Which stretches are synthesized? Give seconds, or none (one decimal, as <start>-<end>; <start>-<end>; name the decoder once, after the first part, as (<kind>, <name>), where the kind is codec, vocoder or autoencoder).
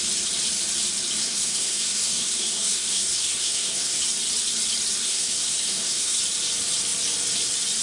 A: 1.2-4.0 (codec, SNAC); 5.0-6.2